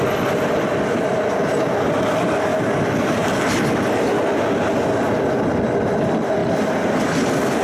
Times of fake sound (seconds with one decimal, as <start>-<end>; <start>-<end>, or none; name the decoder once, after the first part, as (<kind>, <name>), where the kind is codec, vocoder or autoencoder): none